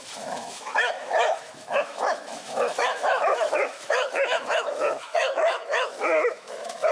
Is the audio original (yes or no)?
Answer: no